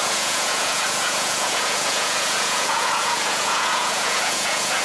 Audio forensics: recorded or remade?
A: remade